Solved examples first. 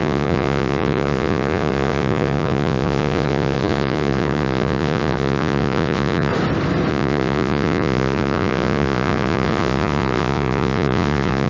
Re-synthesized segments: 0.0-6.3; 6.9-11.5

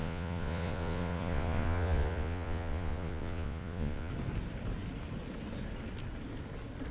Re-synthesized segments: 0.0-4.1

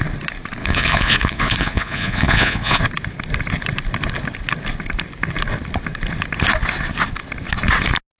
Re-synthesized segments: 0.6-2.8